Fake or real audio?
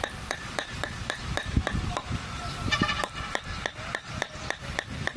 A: fake